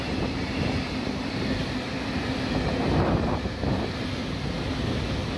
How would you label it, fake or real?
real